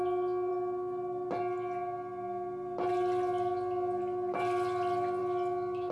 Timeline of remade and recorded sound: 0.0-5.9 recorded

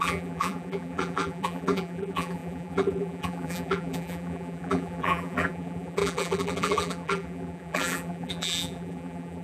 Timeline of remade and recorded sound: 0.0-9.4 remade

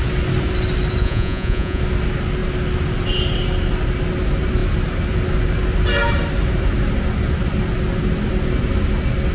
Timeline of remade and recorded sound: 0.0-1.0 recorded; 1.0-1.8 remade; 1.8-9.3 recorded

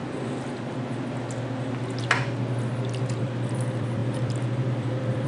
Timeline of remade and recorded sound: 0.0-3.2 recorded; 3.2-5.3 remade